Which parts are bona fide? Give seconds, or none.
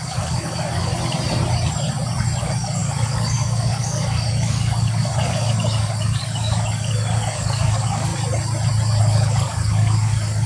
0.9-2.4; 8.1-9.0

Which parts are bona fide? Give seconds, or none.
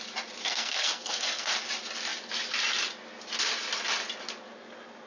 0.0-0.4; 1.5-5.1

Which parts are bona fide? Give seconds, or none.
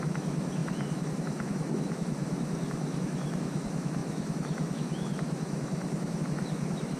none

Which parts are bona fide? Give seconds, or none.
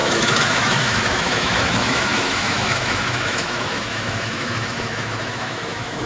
none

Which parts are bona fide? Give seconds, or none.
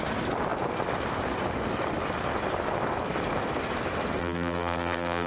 0.0-4.2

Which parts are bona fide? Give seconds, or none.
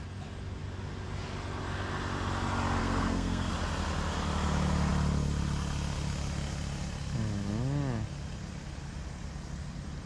0.0-2.8; 3.5-10.1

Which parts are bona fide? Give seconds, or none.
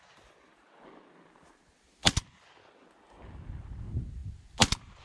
0.0-5.0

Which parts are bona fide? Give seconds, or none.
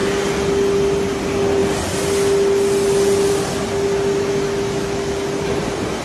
0.0-6.0